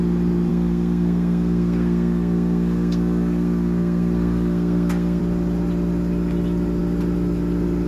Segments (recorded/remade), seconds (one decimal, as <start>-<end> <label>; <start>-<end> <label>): 0.0-0.5 recorded; 0.5-5.2 remade; 5.2-7.9 recorded